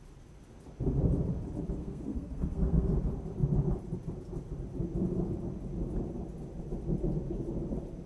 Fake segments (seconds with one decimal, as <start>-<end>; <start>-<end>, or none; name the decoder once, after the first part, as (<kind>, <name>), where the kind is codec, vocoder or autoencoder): 1.8-2.9 (codec, SNAC)